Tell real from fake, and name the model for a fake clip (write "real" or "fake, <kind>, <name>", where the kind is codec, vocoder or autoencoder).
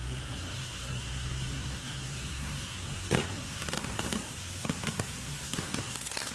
fake, codec, SNAC